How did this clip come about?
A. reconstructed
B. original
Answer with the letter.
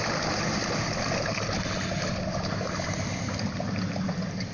B